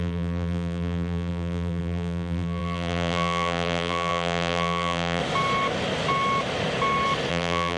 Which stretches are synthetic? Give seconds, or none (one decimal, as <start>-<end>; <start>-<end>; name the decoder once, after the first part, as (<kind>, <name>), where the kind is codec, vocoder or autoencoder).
0.0-5.2 (vocoder, BigVGAN v2); 7.3-7.8